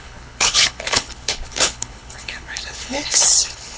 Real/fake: fake